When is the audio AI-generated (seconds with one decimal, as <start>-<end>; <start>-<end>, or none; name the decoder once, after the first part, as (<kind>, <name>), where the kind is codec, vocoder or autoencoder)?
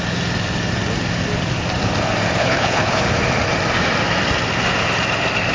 2.4-3.0 (codec, HILCodec)